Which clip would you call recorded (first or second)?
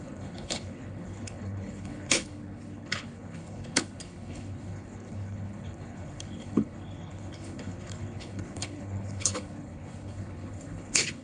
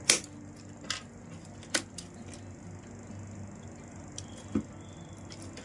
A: second